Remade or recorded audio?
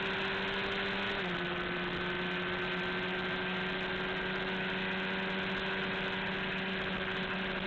recorded